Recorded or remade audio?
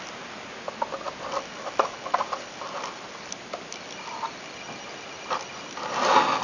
recorded